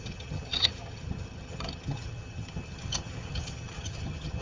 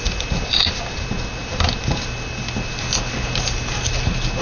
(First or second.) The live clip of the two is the second